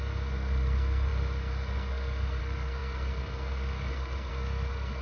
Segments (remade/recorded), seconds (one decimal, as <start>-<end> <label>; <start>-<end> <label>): 0.0-5.0 remade